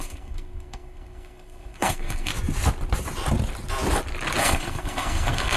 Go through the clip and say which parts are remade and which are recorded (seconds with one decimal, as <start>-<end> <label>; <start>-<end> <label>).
0.0-2.3 remade; 2.3-4.4 recorded; 4.4-5.6 remade